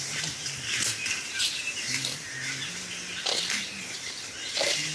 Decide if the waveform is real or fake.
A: real